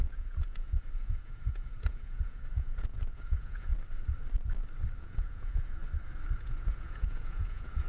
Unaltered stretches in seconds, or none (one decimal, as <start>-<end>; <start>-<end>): 3.7-5.0; 5.8-6.4